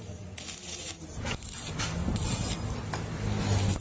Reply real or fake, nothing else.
real